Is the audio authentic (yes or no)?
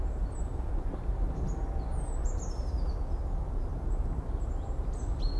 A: yes